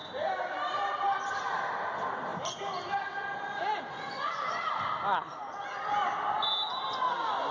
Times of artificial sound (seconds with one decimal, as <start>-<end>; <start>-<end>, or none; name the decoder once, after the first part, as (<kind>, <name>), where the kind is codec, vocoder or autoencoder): none